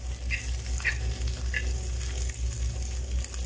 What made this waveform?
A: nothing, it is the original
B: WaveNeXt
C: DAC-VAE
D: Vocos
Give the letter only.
A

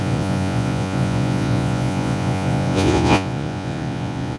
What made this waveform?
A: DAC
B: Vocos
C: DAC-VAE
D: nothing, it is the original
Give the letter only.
B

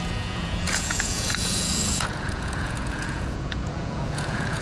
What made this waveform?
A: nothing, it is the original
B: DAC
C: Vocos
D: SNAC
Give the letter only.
C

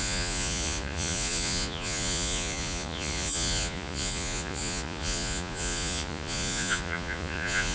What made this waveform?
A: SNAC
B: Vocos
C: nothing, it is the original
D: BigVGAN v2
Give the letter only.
B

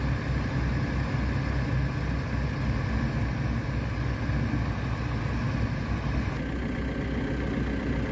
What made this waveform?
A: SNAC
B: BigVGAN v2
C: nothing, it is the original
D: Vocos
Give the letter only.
C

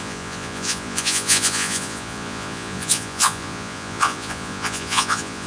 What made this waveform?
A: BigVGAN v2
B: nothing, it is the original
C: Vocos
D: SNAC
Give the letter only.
C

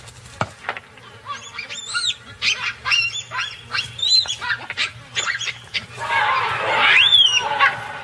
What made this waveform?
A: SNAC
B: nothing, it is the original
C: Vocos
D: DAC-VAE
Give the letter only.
B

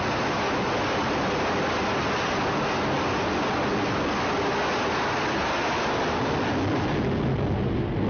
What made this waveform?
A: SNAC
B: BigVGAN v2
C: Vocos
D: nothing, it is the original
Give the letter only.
D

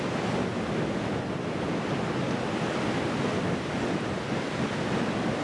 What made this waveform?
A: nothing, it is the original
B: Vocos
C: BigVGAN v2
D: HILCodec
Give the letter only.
A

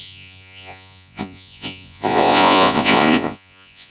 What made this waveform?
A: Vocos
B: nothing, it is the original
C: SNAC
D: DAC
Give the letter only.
A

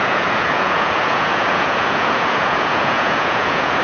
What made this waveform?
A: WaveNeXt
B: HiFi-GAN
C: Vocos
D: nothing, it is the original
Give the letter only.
C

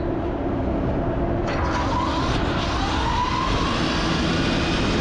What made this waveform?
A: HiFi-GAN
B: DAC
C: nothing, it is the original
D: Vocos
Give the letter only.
C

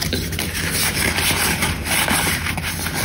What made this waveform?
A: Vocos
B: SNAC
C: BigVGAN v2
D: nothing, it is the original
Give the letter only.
D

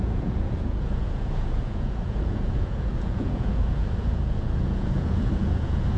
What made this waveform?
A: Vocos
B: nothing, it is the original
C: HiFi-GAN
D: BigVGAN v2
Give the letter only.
A